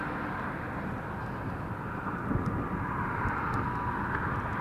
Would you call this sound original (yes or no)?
yes